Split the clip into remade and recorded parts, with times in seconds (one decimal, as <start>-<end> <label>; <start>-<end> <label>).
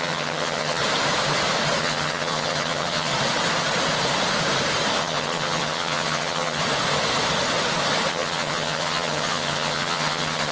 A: 0.0-0.8 remade; 0.8-1.8 recorded; 1.8-3.1 remade; 3.1-5.0 recorded; 5.0-6.6 remade; 6.6-8.1 recorded; 8.1-10.5 remade